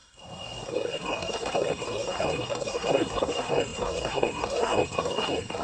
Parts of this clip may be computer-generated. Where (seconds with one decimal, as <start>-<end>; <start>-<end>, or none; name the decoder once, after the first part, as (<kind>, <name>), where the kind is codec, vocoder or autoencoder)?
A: 0.0-5.6 (codec, SNAC)